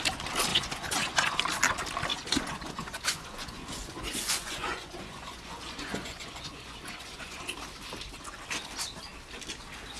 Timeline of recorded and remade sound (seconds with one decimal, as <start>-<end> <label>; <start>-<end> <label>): 0.0-0.5 recorded; 0.5-1.4 remade; 1.4-2.1 recorded; 2.1-7.4 remade; 7.4-10.0 recorded